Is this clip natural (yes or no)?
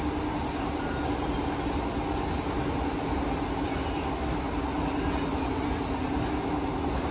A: yes